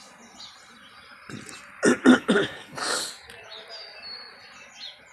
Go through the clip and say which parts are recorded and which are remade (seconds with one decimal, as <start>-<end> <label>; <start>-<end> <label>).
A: 0.0-2.1 recorded; 2.1-3.1 remade; 3.1-5.1 recorded